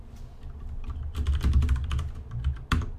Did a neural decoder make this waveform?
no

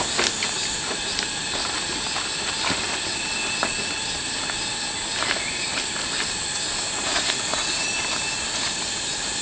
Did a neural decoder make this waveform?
no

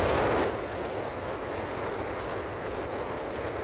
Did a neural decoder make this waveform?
no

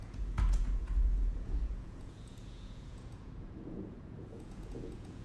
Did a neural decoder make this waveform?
yes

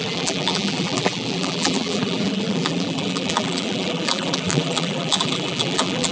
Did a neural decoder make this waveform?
yes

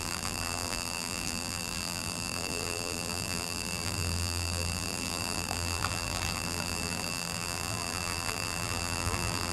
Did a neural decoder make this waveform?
yes